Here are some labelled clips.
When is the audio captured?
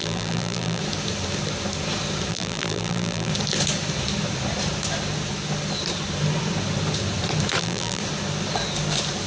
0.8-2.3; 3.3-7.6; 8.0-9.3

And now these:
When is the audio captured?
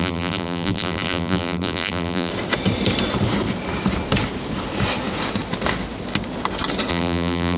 2.3-6.9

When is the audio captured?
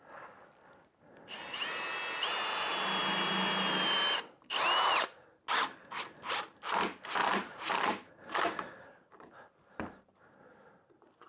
0.0-7.2; 8.1-11.3